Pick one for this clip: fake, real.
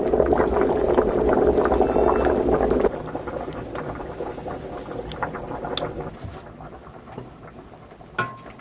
real